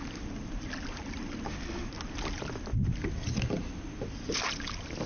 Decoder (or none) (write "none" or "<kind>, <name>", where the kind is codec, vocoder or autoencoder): none